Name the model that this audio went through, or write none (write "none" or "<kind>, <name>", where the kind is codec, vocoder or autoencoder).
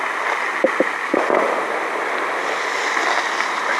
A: none